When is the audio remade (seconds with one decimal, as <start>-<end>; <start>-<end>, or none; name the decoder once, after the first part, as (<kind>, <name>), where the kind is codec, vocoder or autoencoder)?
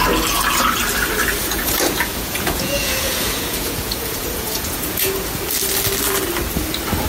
1.4-5.4 (vocoder, Vocos)